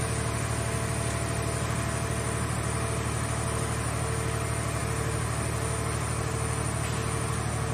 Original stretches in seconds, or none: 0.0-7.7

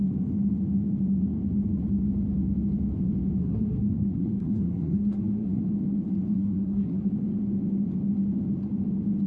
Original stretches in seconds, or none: 0.0-3.4; 5.6-6.3; 7.1-9.3